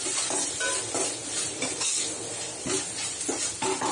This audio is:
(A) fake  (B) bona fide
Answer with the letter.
B